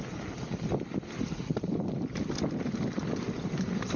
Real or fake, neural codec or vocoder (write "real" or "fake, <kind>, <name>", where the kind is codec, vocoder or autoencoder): real